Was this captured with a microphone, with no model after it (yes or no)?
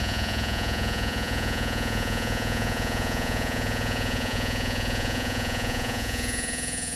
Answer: no